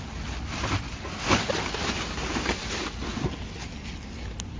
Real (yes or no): yes